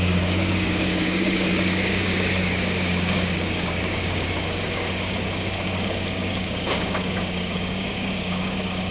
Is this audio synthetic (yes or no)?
yes